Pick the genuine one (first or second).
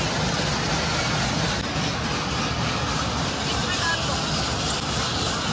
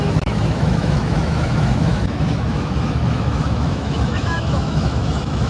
first